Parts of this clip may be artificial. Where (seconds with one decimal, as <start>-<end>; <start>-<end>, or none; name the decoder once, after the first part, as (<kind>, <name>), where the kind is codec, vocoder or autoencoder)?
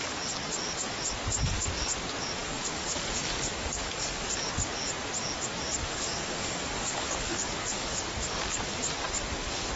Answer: 2.4-4.3 (codec, DAC); 5.9-8.0